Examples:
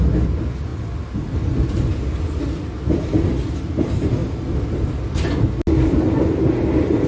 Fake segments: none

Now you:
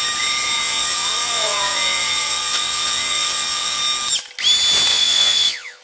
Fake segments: 0.6-3.8 (vocoder, WaveNeXt); 4.9-5.8